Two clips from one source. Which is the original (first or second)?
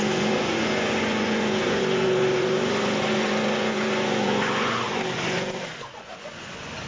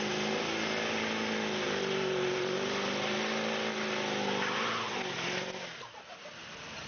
second